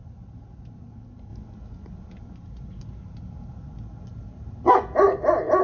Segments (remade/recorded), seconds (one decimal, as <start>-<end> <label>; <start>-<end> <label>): 0.0-5.6 recorded